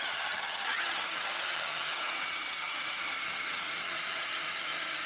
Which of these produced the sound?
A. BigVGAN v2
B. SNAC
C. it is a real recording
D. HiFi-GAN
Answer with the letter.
D